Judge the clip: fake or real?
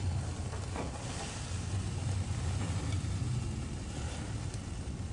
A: real